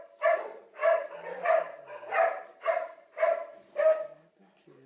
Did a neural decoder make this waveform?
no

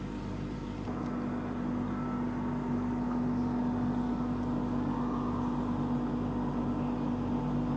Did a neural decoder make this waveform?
no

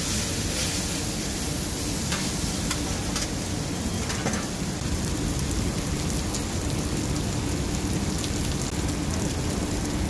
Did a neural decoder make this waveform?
no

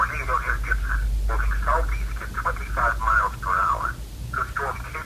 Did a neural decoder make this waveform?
no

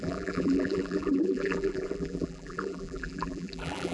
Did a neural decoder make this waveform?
yes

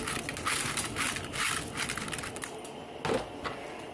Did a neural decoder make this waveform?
no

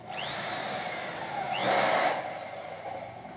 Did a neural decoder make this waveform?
no